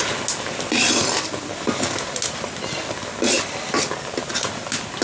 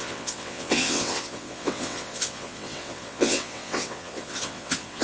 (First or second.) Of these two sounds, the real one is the first